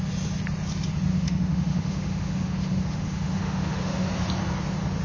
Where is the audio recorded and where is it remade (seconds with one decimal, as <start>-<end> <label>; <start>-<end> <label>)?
0.0-1.1 recorded; 1.1-4.1 remade; 4.1-5.0 recorded